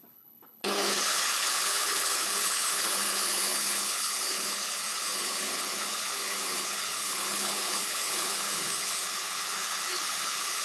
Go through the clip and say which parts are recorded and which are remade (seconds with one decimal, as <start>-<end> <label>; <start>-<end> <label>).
0.0-10.6 remade

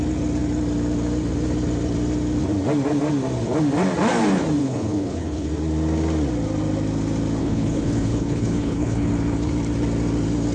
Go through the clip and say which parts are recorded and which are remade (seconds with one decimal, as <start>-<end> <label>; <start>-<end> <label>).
0.0-4.6 recorded; 4.6-5.5 remade; 5.5-7.4 recorded; 7.4-9.1 remade; 9.1-10.5 recorded

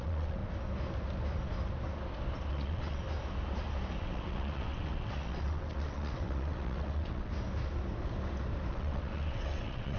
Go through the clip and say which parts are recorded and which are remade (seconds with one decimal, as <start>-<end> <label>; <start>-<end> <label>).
0.0-0.4 remade; 0.4-2.5 recorded; 2.5-3.0 remade; 3.0-4.0 recorded; 4.0-7.3 remade; 7.3-8.7 recorded; 8.7-10.0 remade

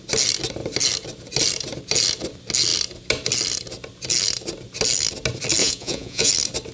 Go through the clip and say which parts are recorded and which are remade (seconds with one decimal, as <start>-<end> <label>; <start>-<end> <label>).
0.0-5.6 recorded; 5.6-6.3 remade; 6.3-6.7 recorded

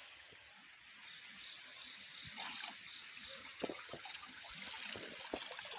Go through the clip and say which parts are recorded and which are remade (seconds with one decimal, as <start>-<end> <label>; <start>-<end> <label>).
0.0-0.5 remade; 0.5-3.4 recorded; 3.4-4.5 remade; 4.5-5.8 recorded

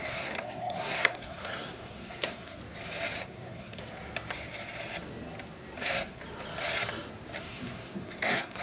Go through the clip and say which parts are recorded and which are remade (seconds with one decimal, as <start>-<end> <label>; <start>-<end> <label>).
0.0-2.6 remade; 2.6-3.2 recorded; 3.2-3.8 remade; 3.8-5.8 recorded; 5.8-6.2 remade; 6.2-7.4 recorded; 7.4-8.6 remade